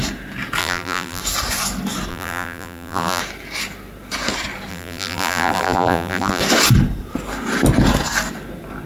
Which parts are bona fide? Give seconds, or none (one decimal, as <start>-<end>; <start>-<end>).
0.0-0.6; 1.2-2.1; 3.2-4.7; 6.4-8.9